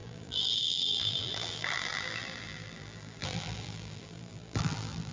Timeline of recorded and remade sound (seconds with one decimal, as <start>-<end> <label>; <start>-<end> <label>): 0.0-5.1 remade